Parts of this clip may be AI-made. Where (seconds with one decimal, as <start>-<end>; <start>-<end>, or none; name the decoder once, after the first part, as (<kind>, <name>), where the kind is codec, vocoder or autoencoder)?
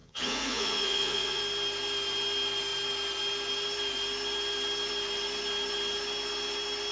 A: 0.0-1.4 (vocoder, Vocos)